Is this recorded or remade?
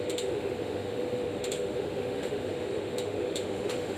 remade